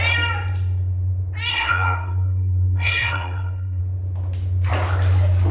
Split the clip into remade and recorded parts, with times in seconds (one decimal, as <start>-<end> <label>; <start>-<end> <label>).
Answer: 0.0-1.5 recorded; 1.5-3.8 remade; 3.8-5.5 recorded